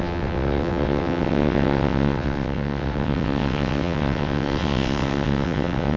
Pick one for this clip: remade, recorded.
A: remade